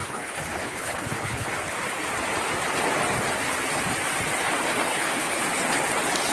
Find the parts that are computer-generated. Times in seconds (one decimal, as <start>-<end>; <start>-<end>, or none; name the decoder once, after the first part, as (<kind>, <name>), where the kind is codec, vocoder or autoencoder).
0.0-1.5 (codec, HILCodec); 4.9-5.4